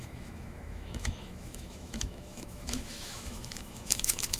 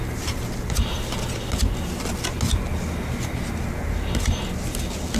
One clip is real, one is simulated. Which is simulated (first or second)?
first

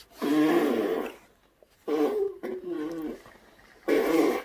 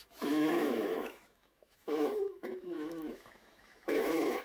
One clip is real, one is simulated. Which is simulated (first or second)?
second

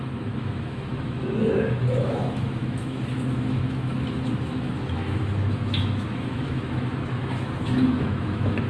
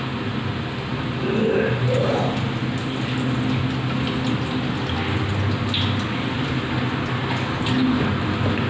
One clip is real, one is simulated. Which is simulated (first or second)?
first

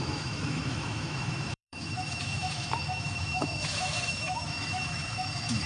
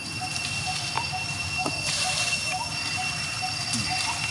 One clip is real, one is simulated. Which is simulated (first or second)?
first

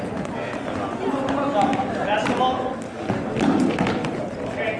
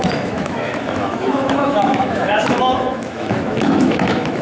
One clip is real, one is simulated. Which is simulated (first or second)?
second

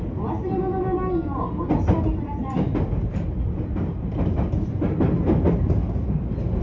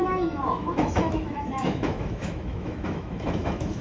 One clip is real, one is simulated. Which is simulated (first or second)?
second